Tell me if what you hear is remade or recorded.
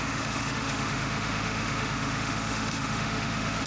remade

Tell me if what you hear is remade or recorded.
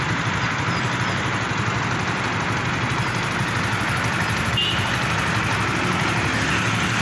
recorded